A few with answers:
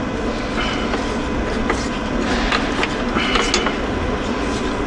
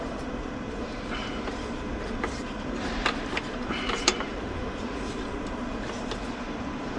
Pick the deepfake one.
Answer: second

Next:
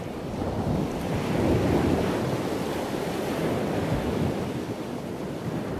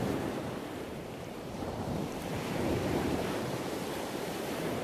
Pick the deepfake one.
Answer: second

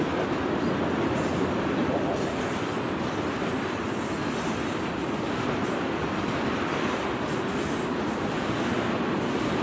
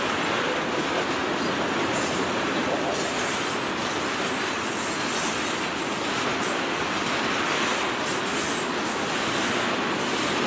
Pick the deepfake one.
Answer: first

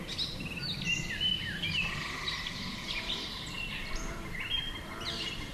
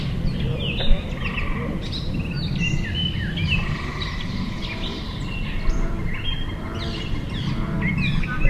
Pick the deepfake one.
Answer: first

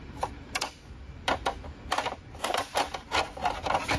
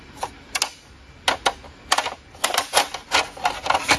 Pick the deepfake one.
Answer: first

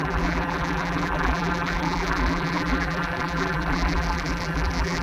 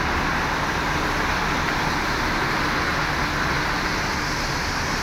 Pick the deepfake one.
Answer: first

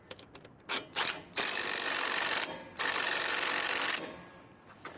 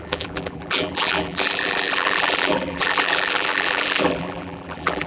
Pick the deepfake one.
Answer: second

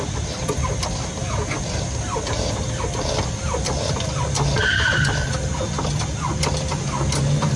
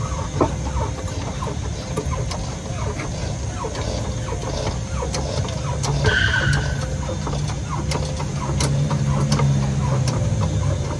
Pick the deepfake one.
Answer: first